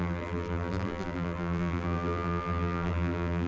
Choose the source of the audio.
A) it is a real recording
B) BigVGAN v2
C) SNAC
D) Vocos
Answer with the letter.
B